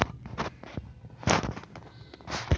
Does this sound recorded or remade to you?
recorded